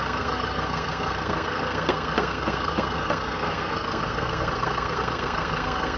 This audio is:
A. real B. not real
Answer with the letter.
B